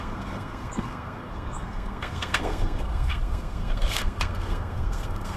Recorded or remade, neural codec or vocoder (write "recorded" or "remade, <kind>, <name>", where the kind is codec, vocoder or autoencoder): remade, codec, SNAC